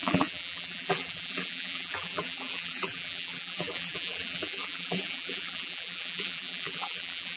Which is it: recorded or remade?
remade